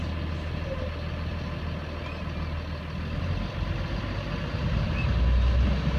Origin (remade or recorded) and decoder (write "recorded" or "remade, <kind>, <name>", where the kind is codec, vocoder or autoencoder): recorded